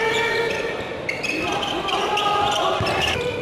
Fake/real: real